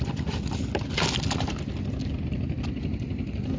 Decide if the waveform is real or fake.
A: real